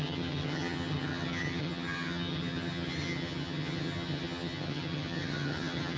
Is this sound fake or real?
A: fake